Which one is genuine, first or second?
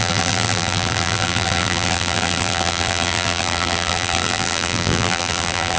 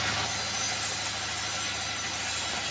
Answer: second